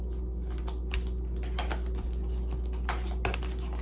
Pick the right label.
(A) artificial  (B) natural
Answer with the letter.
B